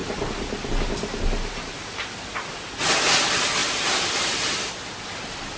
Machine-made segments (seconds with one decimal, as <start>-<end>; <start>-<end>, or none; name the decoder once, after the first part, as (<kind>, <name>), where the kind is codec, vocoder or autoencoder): 3.6-4.7 (vocoder, BigVGAN v2)